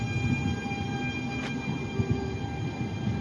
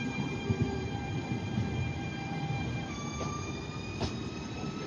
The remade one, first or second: second